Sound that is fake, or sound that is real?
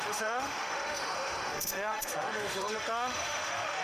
fake